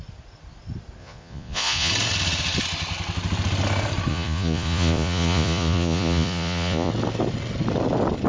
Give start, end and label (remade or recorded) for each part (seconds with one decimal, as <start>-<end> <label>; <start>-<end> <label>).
0.0-1.0 recorded; 1.0-1.9 remade; 1.9-4.1 recorded; 4.1-6.9 remade; 6.9-8.3 recorded